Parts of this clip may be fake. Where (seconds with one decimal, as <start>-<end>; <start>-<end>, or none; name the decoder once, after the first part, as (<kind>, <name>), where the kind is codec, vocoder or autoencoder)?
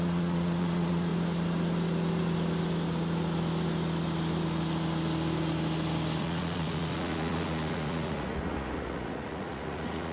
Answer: 0.0-1.1 (vocoder, Vocos); 6.2-10.1